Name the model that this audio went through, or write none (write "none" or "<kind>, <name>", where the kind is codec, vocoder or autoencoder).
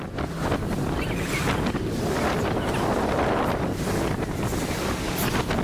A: none